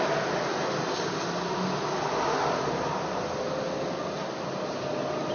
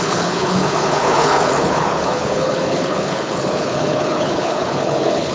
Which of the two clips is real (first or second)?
first